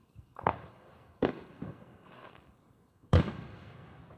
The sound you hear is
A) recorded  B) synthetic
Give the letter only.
B